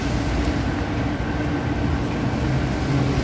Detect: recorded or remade recorded